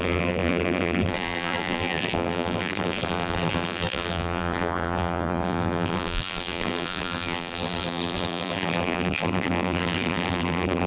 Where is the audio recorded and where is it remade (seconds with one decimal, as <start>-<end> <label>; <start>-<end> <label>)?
0.0-10.9 remade